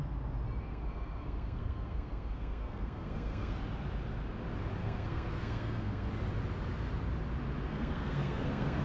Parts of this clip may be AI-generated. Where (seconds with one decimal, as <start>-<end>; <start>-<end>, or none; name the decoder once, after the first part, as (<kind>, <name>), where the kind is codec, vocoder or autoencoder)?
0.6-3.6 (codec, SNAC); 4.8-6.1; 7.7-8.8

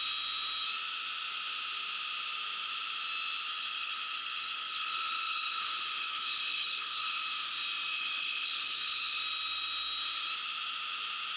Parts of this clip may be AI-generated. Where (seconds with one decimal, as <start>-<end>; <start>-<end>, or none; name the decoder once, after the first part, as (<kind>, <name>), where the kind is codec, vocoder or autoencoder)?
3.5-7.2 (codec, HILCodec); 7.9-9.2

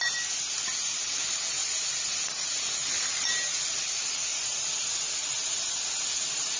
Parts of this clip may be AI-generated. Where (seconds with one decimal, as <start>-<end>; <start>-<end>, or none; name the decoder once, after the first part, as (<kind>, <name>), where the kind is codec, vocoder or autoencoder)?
none

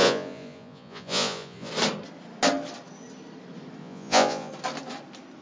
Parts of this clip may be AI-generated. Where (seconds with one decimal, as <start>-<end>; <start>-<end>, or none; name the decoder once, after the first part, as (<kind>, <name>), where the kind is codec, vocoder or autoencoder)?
0.0-1.7 (vocoder, Vocos); 3.8-4.5